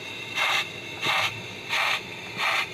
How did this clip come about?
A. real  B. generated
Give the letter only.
B